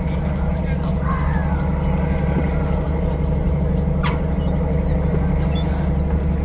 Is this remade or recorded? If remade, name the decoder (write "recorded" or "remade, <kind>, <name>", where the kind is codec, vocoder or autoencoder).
recorded